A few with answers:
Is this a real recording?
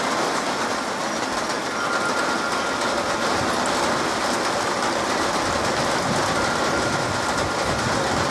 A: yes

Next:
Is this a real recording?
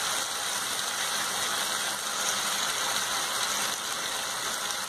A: yes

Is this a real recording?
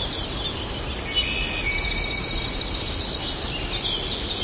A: yes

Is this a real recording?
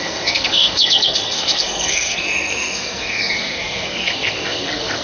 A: no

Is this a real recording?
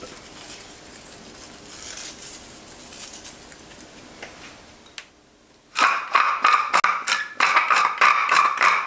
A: yes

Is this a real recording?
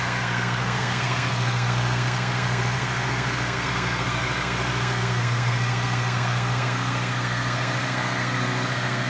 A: no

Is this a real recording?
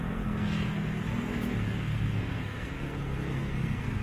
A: no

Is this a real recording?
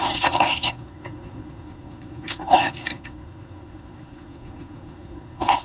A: no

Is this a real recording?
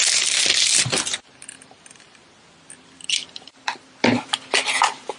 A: yes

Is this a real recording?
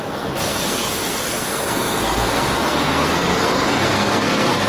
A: no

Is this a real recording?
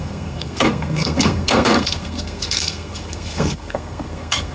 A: no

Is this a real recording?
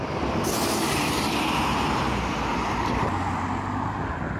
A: yes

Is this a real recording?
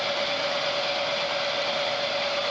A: yes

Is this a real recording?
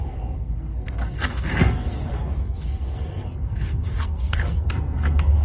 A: no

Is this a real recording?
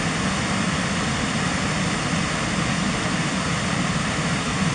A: yes